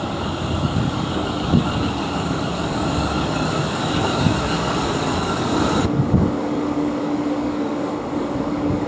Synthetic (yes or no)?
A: yes